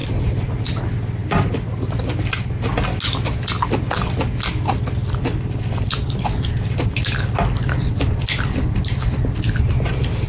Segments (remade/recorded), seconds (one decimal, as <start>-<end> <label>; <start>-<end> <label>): 0.0-10.3 recorded